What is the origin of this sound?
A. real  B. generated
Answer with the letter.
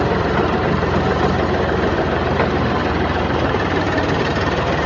B